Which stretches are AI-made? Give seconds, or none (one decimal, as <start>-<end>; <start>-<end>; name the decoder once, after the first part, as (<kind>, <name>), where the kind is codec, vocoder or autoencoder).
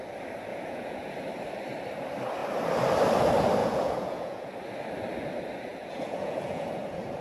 0.5-1.1 (vocoder, Vocos); 3.6-4.5; 5.7-6.8